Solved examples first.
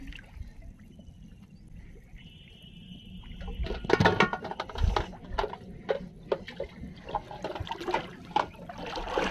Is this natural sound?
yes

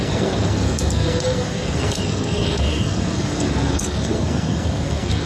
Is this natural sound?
no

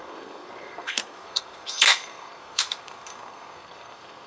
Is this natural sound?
no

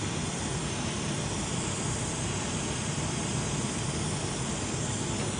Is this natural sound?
yes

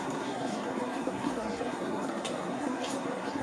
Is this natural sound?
no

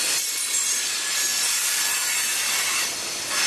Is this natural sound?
yes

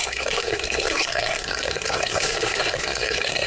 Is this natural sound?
no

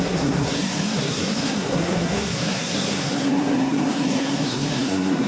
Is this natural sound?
no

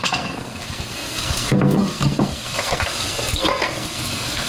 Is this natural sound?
no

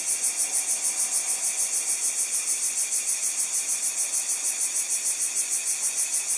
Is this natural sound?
yes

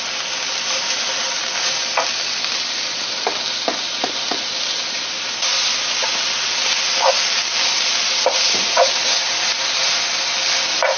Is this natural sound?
yes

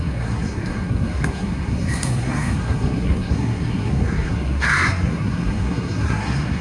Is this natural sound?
no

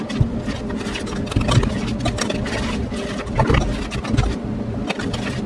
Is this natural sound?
yes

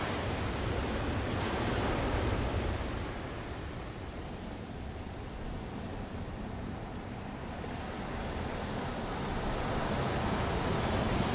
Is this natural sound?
yes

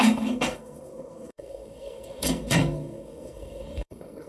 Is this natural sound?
no